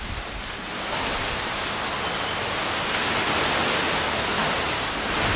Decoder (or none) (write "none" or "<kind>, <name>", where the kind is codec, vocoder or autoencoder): none